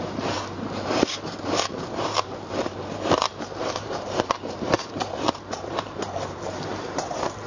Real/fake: fake